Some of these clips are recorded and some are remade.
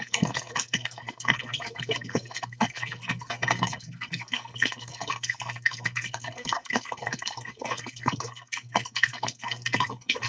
remade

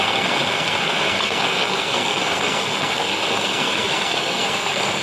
remade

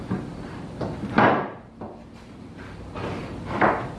recorded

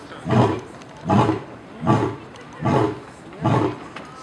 recorded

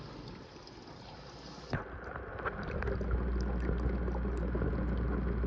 recorded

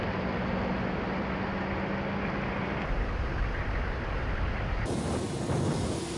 recorded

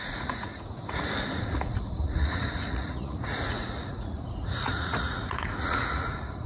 remade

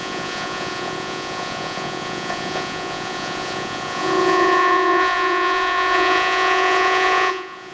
remade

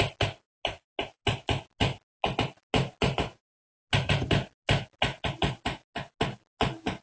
recorded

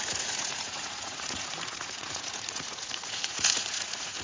remade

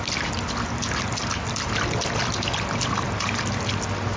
recorded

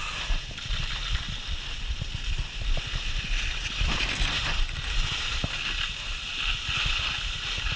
recorded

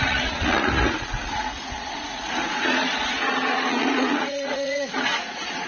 remade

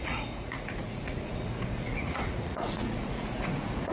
remade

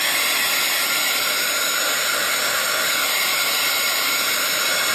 recorded